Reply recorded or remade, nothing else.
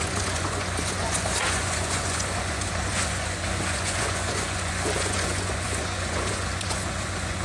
remade